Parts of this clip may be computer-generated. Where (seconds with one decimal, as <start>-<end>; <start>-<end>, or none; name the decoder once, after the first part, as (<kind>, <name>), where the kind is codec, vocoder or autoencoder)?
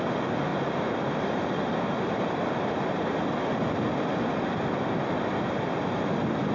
0.5-3.0 (vocoder, BigVGAN v2)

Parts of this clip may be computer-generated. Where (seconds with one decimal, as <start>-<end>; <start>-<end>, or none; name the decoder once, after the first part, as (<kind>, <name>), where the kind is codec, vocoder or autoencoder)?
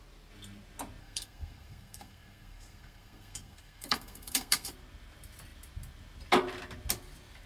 1.0-4.7 (codec, SNAC)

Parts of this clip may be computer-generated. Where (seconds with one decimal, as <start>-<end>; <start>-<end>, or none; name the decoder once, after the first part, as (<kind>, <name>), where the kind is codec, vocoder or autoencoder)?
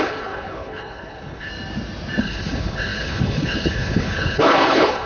0.0-1.5 (codec, HILCodec); 2.2-5.1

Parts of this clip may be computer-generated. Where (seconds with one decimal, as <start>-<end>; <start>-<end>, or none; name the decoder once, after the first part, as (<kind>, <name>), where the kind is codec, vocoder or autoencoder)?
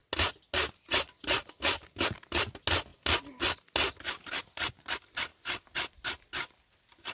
none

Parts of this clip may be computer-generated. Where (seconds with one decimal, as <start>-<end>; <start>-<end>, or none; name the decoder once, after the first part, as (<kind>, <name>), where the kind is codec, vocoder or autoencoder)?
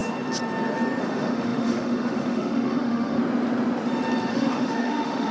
1.0-3.2 (autoencoder, DAC-VAE); 4.3-5.3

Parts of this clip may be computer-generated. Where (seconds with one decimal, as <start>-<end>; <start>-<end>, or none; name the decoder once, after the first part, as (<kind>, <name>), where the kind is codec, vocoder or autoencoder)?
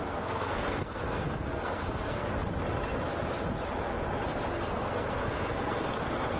0.0-2.3 (codec, SNAC); 4.5-6.4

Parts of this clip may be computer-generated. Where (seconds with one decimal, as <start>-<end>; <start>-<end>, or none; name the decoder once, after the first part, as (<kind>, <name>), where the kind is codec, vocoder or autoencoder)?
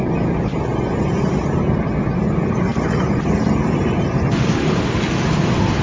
none